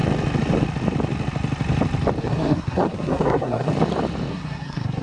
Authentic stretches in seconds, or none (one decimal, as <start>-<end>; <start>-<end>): 0.0-2.2; 3.7-4.3